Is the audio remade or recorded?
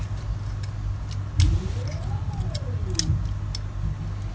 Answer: recorded